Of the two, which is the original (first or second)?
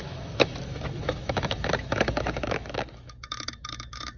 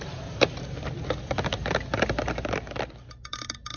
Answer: second